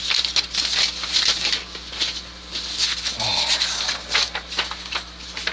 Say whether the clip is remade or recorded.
recorded